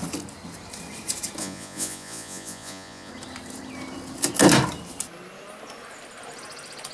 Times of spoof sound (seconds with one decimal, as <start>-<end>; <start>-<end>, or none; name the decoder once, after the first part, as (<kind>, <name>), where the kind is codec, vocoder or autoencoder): 1.4-3.1 (vocoder, Vocos)